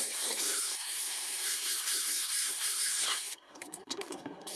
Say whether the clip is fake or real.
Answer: fake